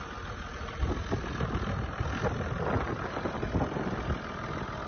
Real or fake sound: real